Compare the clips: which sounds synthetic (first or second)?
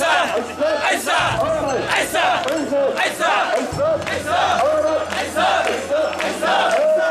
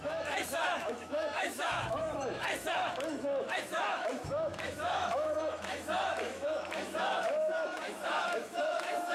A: second